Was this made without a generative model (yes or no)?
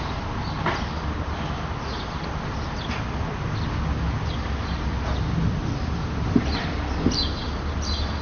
yes